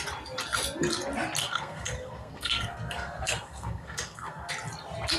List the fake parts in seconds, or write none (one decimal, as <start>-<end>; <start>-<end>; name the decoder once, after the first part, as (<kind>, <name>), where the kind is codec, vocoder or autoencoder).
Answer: 1.4-4.5 (codec, SNAC)